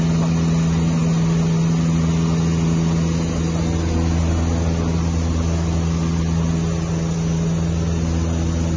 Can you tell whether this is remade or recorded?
recorded